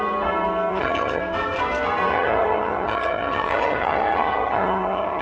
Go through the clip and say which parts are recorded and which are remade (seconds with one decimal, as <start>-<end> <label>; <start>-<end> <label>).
0.0-0.7 recorded; 0.7-1.2 remade; 1.2-2.1 recorded; 2.1-5.2 remade